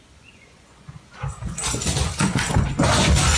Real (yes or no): no